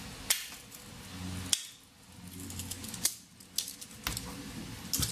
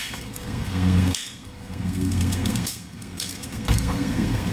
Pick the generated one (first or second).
second